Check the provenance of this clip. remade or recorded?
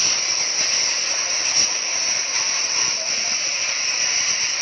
recorded